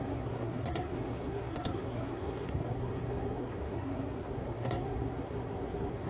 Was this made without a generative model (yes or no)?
no